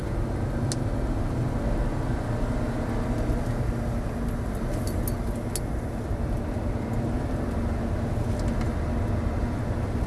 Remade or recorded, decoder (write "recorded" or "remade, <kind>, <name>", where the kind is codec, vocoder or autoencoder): recorded